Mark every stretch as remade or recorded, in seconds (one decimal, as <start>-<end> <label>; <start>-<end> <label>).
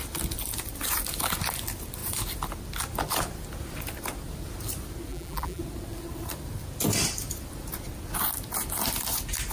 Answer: 0.0-5.1 recorded; 5.1-5.6 remade; 5.6-9.5 recorded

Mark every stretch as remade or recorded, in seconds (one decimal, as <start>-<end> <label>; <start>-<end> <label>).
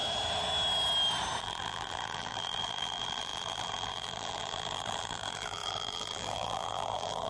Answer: 0.0-1.4 recorded; 1.4-7.3 remade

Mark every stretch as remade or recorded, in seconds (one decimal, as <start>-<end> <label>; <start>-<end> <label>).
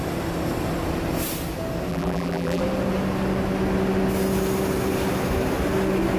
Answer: 0.0-1.9 recorded; 1.9-2.6 remade; 2.6-6.2 recorded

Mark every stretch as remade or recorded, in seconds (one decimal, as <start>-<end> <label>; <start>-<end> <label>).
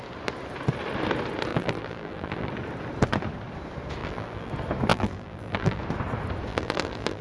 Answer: 0.0-1.5 recorded; 1.5-2.5 remade; 2.5-4.0 recorded; 4.0-4.5 remade; 4.5-4.9 recorded; 4.9-5.8 remade; 5.8-6.5 recorded; 6.5-7.2 remade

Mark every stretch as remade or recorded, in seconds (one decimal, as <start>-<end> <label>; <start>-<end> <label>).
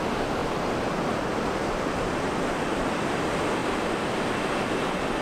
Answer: 0.0-1.6 recorded; 1.6-3.1 remade; 3.1-3.6 recorded; 3.6-4.3 remade; 4.3-5.2 recorded